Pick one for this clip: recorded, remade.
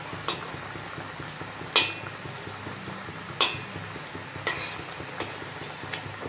recorded